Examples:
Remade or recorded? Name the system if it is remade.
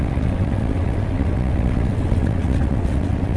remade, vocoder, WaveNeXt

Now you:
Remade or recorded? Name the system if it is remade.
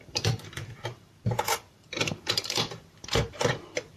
remade, vocoder, BigVGAN v2